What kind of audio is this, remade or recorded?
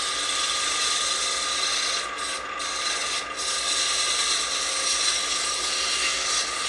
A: recorded